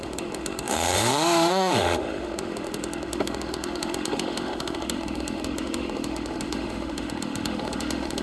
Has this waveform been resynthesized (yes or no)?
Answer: yes